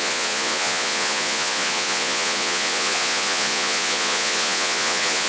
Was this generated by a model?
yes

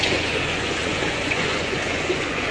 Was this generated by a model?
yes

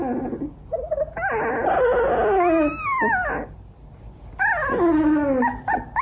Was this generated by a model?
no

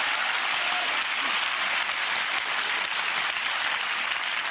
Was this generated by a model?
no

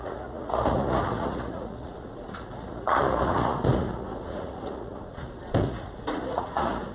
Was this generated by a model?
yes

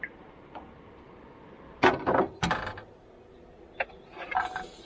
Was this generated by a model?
no